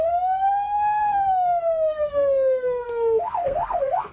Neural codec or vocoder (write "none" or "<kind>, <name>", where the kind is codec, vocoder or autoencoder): codec, SNAC